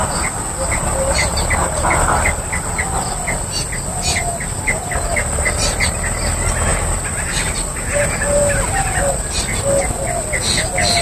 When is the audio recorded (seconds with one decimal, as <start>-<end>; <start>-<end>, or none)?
0.0-11.0